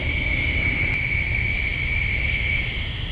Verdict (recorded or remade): recorded